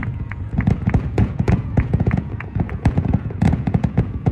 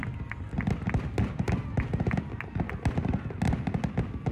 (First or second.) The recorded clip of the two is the second